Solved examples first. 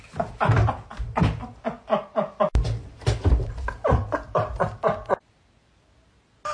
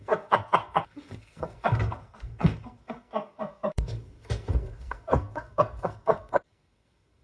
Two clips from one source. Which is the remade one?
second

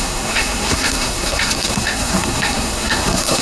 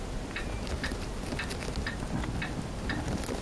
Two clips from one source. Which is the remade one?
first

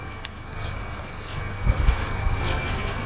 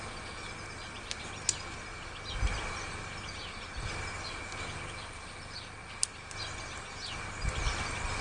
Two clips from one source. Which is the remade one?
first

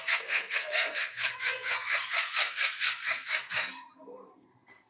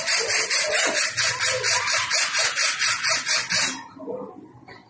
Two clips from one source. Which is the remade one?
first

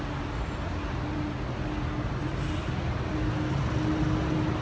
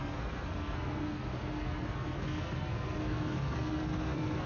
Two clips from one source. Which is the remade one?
second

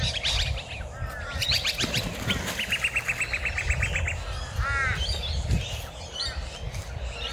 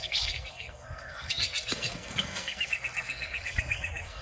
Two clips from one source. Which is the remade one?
second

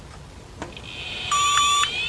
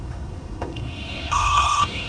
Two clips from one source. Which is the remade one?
second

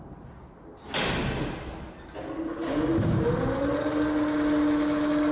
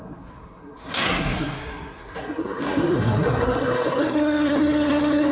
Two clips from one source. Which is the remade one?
second